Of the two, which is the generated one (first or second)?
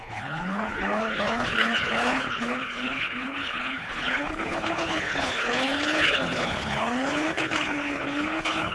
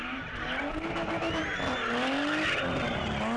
first